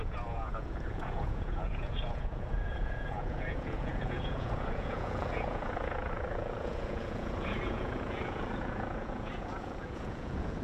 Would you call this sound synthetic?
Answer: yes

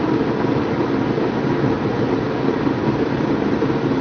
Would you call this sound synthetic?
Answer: no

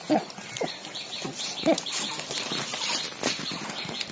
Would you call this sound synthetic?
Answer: no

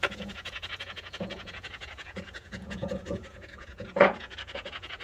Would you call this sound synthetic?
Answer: yes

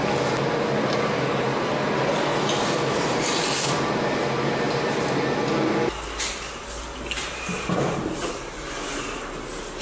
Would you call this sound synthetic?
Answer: no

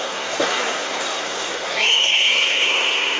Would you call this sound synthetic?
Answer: yes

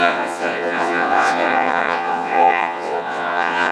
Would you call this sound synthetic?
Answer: yes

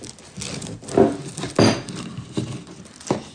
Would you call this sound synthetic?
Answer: no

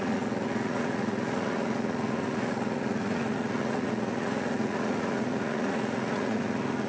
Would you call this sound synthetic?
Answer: yes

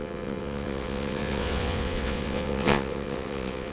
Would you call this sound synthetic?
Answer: yes